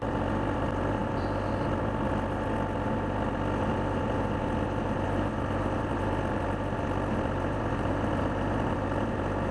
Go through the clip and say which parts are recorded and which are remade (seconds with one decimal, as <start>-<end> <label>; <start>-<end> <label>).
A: 0.0-9.5 recorded